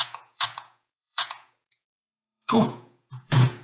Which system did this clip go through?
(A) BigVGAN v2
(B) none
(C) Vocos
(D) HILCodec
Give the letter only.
C